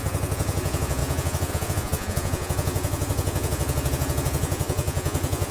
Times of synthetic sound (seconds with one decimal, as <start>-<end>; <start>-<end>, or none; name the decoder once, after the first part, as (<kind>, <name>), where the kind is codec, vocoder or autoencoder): 0.0-5.5 (vocoder, Vocos)